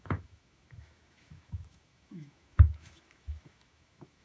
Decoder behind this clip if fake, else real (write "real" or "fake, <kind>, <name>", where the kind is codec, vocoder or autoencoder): fake, autoencoder, DAC-VAE